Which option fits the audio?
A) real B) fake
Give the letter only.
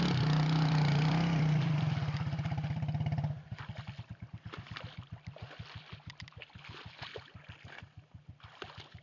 B